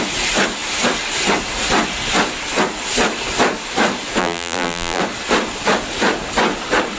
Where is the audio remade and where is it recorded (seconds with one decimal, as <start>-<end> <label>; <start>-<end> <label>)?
0.0-4.2 recorded; 4.2-5.0 remade; 5.0-7.0 recorded

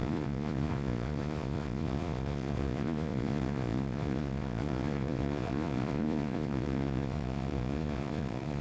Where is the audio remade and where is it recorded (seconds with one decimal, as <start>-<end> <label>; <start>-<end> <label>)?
0.0-8.6 remade

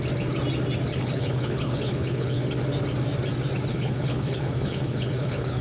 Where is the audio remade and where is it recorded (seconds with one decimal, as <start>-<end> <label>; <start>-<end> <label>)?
0.0-0.9 recorded; 0.9-2.5 remade; 2.5-3.7 recorded; 3.7-5.6 remade

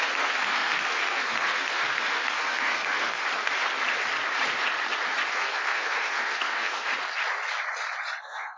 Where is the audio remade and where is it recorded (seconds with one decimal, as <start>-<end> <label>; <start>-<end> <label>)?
0.0-3.2 remade; 3.2-5.3 recorded; 5.3-6.9 remade; 6.9-8.2 recorded; 8.2-8.6 remade

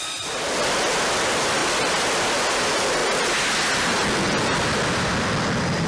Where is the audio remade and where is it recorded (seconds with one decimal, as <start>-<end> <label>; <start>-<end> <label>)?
0.0-5.9 recorded

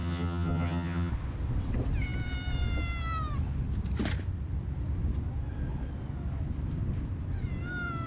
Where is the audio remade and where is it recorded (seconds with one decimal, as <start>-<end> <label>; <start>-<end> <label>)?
0.0-1.1 remade; 1.1-8.1 recorded

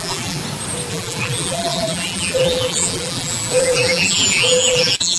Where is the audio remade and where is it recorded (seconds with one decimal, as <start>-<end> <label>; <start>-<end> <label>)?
0.0-0.4 remade; 0.4-0.9 recorded; 0.9-5.2 remade